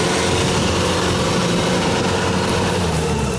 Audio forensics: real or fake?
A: fake